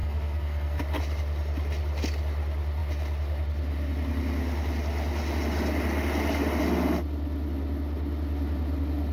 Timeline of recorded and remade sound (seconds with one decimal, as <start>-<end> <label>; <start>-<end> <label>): 0.0-0.8 remade; 0.8-9.1 recorded